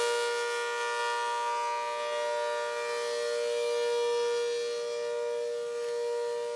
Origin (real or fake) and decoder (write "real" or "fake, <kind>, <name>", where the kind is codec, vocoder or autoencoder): real